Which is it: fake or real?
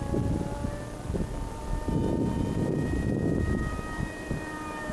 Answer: fake